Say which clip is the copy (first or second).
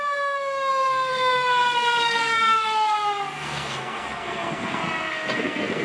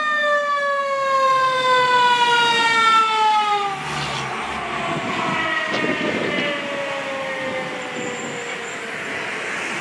first